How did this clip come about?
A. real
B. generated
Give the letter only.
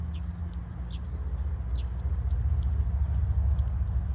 A